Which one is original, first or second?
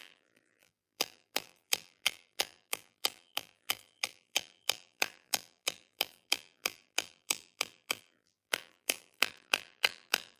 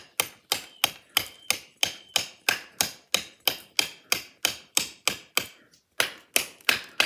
second